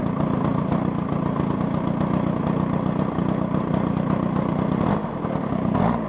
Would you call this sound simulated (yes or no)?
no